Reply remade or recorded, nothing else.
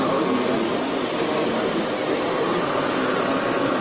recorded